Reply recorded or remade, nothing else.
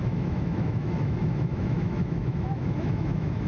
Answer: remade